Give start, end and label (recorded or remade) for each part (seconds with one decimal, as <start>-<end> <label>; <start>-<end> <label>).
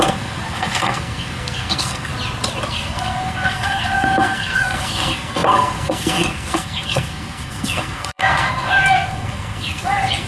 0.0-2.1 remade; 2.1-2.7 recorded; 2.7-10.3 remade